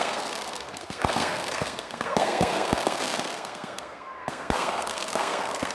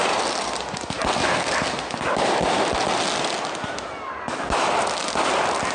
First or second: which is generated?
first